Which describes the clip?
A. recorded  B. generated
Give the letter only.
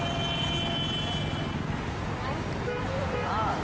A